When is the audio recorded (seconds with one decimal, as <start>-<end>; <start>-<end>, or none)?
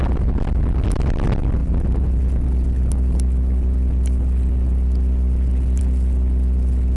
0.0-7.0